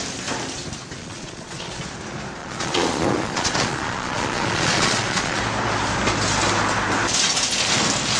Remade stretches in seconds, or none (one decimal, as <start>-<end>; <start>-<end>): 1.0-1.8; 2.4-5.4